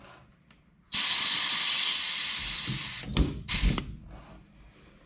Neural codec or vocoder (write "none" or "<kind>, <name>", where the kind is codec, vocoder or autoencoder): none